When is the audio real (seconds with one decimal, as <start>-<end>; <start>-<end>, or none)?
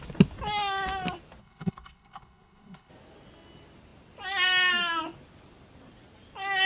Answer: 0.0-1.4; 2.9-6.7